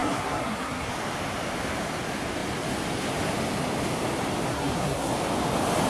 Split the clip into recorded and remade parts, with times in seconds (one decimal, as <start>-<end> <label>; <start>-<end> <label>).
0.0-0.9 remade; 0.9-4.5 recorded; 4.5-5.1 remade; 5.1-5.9 recorded